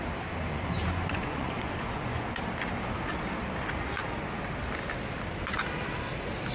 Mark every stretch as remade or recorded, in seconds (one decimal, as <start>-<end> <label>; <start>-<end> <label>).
0.0-0.5 recorded; 0.5-2.3 remade; 2.3-6.5 recorded